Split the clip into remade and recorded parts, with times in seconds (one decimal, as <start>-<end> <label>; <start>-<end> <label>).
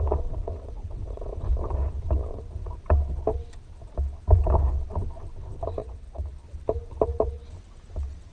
0.0-1.4 remade; 1.4-5.8 recorded; 5.8-6.3 remade; 6.3-8.3 recorded